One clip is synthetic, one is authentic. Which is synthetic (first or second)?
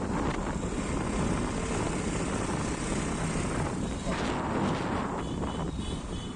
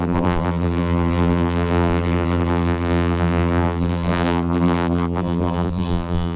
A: second